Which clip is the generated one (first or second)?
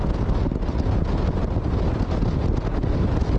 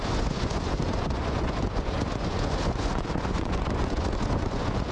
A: second